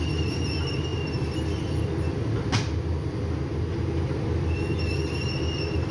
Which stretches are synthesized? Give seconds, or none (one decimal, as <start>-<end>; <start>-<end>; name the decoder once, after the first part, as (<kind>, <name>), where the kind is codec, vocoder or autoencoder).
none